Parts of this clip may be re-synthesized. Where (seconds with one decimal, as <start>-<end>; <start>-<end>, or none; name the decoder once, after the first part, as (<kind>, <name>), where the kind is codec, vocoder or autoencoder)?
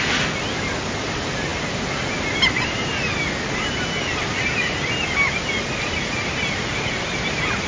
none